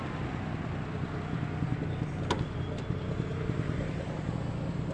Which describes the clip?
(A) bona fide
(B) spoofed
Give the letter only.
A